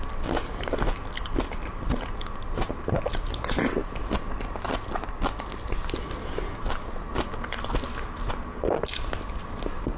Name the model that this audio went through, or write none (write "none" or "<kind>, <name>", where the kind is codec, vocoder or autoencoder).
none